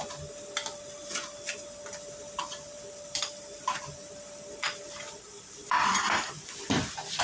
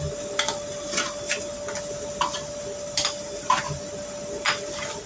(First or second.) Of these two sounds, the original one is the second